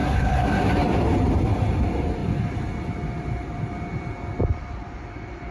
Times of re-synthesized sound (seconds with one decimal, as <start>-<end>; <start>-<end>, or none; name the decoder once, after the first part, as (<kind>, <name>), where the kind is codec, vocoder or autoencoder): 0.0-0.7 (codec, SNAC)